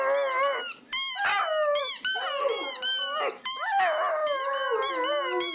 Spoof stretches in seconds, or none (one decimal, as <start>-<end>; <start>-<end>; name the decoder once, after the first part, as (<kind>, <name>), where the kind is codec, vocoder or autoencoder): none

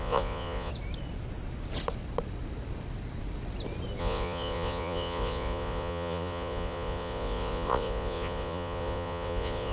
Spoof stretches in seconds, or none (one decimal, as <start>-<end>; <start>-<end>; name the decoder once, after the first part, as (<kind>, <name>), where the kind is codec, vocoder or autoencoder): 0.0-0.7 (vocoder, Vocos); 4.0-9.7

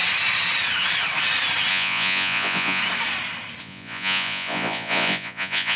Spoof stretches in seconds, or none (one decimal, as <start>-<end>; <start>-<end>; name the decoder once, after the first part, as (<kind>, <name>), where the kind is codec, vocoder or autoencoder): 1.7-2.8 (vocoder, Vocos); 3.6-5.8

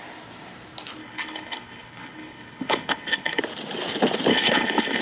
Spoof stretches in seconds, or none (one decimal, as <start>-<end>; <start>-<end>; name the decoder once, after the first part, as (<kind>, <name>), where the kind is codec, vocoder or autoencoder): 1.0-3.4 (codec, HILCodec); 4.3-5.0

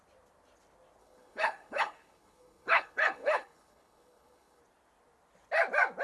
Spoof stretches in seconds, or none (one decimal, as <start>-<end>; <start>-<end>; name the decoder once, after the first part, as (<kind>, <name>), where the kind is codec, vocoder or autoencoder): 1.0-4.6 (codec, HILCodec)

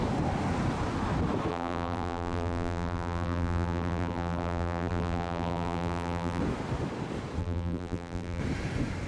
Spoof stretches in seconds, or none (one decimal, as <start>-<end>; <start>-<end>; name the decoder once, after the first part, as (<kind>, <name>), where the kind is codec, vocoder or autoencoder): 1.5-6.4 (vocoder, BigVGAN v2); 7.4-8.4

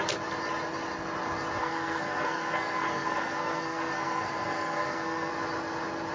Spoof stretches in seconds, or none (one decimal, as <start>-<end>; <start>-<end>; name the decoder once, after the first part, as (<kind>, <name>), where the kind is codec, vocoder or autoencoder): 1.6-5.3 (codec, SNAC)